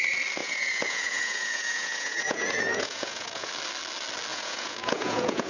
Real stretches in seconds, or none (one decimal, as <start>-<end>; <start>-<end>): 0.0-0.4; 3.5-4.3